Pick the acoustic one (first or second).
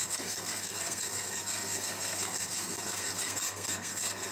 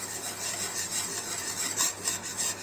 second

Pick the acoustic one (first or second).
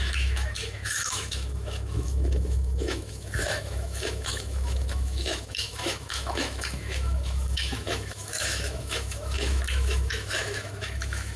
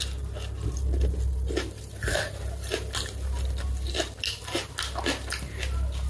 second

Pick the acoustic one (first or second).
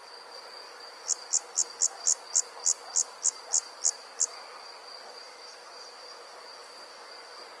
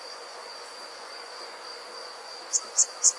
first